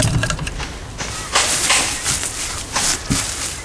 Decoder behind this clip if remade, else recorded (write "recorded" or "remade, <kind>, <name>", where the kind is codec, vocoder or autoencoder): recorded